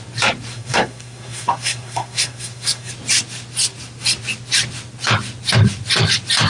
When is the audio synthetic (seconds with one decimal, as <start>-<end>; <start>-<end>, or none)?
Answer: 0.5-2.9